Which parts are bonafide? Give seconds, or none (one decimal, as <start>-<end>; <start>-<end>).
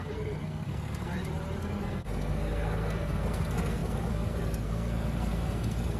1.1-1.6